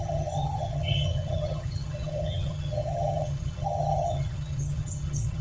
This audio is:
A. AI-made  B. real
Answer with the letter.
A